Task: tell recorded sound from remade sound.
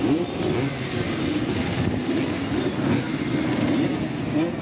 recorded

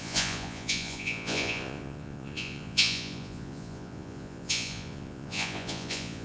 remade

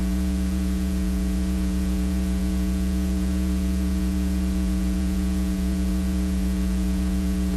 remade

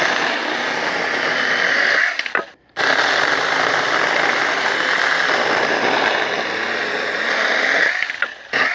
recorded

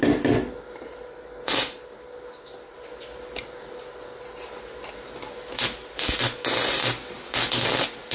recorded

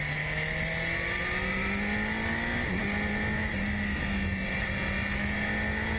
recorded